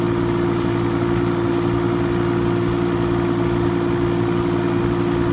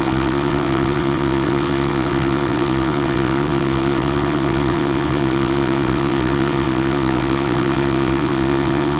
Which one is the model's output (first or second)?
second